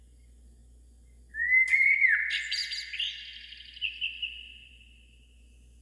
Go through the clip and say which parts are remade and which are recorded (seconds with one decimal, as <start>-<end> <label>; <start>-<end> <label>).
0.0-5.8 recorded